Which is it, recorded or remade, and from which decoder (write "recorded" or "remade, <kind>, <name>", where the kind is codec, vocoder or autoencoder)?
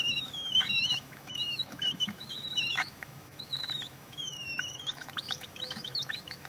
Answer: remade, autoencoder, DAC-VAE